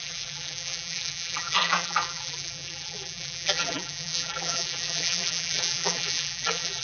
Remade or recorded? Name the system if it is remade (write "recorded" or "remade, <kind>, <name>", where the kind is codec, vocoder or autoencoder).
remade, vocoder, BigVGAN v2